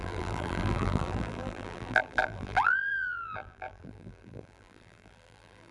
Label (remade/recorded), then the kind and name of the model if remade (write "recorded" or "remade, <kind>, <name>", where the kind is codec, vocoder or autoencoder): remade, vocoder, BigVGAN v2